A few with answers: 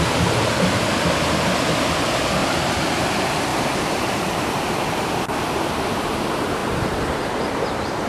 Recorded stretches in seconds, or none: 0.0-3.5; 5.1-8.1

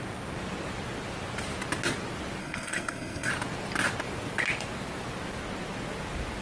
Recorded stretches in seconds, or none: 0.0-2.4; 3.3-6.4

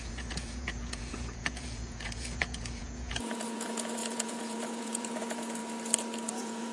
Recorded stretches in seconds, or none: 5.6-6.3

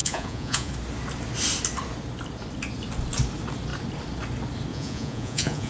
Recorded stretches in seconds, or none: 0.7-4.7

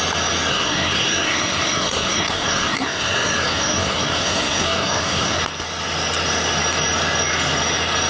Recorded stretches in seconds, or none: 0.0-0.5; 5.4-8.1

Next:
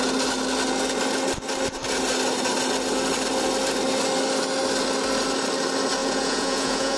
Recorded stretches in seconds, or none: 0.0-6.0